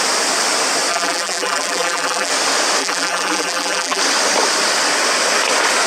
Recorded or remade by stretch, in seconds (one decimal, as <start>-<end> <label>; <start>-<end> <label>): 0.0-0.9 recorded; 0.9-2.3 remade; 2.3-2.8 recorded; 2.8-4.0 remade; 4.0-5.9 recorded